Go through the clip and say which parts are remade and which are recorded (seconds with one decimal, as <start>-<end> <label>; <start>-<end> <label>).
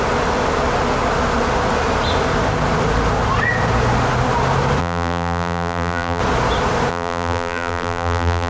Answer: 0.0-4.8 recorded; 4.8-6.2 remade; 6.2-6.9 recorded; 6.9-8.5 remade